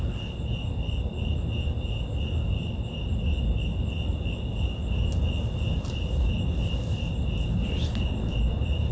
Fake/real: real